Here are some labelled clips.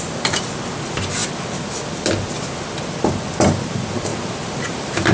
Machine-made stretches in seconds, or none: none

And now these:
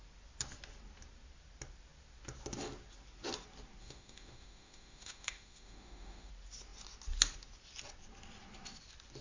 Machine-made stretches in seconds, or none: 3.8-6.3 (autoencoder, DAC-VAE)

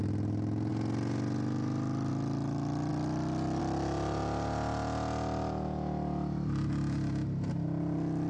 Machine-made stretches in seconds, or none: none

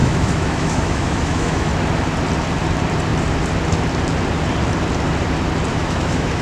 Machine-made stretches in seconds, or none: 0.0-1.7 (autoencoder, DAC-VAE); 5.7-6.4

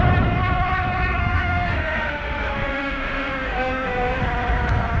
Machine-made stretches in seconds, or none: 1.2-4.2 (autoencoder, DAC-VAE)

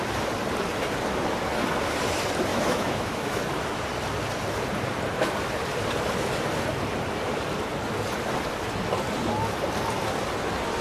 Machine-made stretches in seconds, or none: 2.5-3.4 (autoencoder, DAC-VAE)

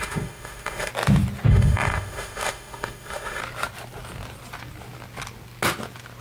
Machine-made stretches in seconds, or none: 0.0-0.9 (autoencoder, DAC-VAE); 1.5-3.4

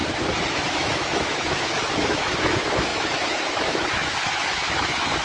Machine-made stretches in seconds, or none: 0.5-5.2 (autoencoder, DAC-VAE)